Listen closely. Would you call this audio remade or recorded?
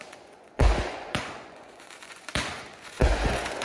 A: remade